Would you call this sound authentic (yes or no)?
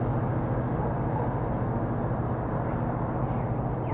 yes